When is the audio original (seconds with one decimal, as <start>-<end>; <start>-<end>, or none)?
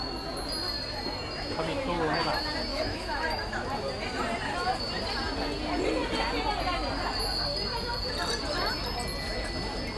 0.0-2.7; 3.5-10.0